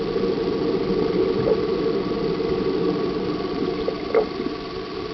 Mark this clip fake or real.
real